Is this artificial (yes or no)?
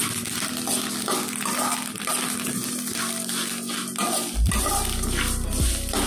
no